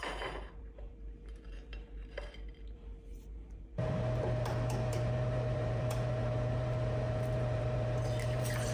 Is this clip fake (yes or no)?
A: yes